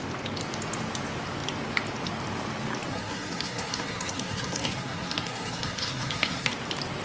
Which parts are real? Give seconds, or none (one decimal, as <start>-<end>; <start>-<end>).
0.0-2.9; 6.5-7.0